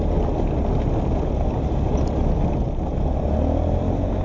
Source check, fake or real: real